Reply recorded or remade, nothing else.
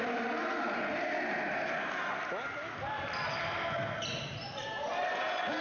recorded